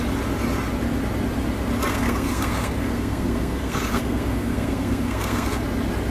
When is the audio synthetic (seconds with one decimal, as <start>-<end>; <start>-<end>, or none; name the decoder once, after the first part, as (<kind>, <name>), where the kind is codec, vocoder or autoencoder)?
1.9-5.6 (codec, SNAC)